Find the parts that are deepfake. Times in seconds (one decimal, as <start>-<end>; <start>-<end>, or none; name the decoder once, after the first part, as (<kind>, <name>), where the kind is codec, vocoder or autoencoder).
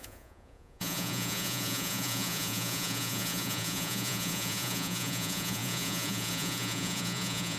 0.0-7.6 (vocoder, Vocos)